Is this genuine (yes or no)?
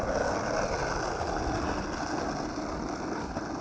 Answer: yes